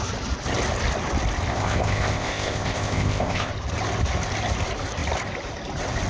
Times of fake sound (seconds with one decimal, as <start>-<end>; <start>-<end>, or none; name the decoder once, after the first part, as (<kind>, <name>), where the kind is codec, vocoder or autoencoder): 1.5-3.5 (codec, ZipCodec)